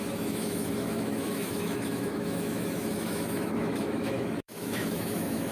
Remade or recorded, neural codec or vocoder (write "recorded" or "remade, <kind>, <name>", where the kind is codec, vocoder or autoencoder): remade, autoencoder, DAC-VAE